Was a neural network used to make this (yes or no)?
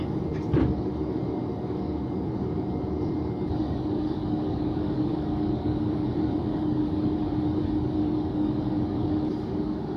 yes